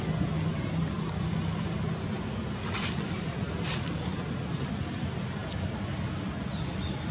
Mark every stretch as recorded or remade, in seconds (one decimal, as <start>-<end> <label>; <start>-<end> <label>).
0.0-7.1 recorded

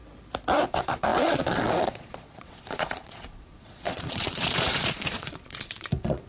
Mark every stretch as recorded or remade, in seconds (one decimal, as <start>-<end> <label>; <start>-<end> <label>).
0.0-0.7 recorded; 0.7-6.3 remade

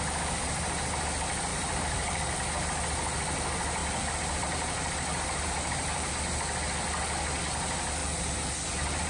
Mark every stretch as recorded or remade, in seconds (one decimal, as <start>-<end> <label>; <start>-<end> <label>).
0.0-1.5 recorded; 1.5-2.3 remade; 2.3-3.8 recorded; 3.8-6.1 remade; 6.1-8.0 recorded; 8.0-8.5 remade; 8.5-9.1 recorded

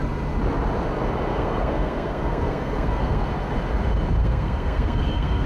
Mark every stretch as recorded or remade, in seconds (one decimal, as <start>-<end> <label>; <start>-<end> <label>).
0.0-1.3 recorded; 1.3-3.3 remade; 3.3-4.2 recorded; 4.2-5.5 remade

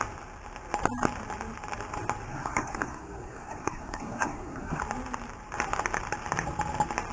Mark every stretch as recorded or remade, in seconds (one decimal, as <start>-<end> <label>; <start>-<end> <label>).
0.0-2.3 recorded; 2.3-4.8 remade; 4.8-7.1 recorded

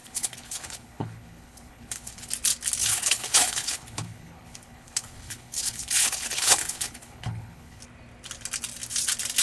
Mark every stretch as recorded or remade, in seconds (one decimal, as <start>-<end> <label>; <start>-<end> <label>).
0.0-2.3 remade; 2.3-2.8 recorded; 2.8-7.8 remade; 7.8-9.4 recorded

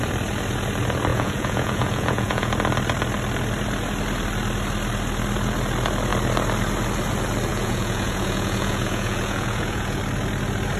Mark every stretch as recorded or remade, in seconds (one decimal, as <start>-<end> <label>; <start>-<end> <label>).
0.0-1.1 recorded; 1.1-2.5 remade; 2.5-7.5 recorded; 7.5-10.0 remade; 10.0-10.8 recorded

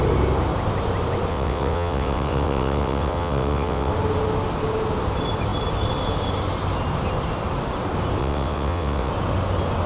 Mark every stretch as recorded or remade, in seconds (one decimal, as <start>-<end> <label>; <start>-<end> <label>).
0.0-1.3 recorded; 1.3-3.9 remade; 3.9-8.2 recorded; 8.2-9.1 remade; 9.1-9.9 recorded